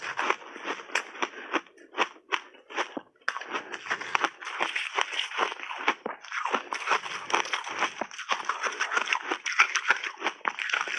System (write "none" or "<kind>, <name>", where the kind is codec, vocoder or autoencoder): none